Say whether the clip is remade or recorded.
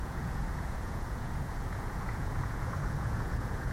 remade